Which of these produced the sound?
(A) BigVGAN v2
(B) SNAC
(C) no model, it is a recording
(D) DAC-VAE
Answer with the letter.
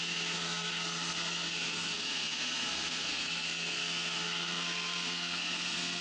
B